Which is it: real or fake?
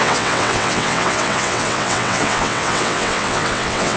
fake